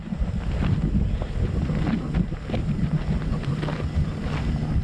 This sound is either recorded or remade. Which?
recorded